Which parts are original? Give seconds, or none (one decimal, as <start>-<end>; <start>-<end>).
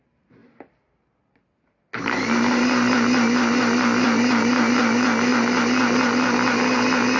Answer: 0.0-7.2